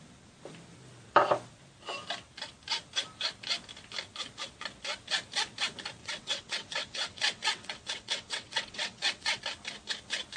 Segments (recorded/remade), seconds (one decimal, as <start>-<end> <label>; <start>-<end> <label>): 0.0-6.0 recorded; 6.0-9.4 remade; 9.4-10.4 recorded